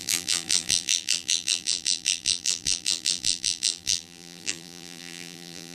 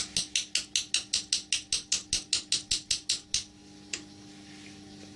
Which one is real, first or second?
second